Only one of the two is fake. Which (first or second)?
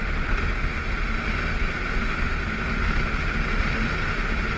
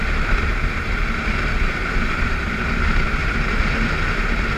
second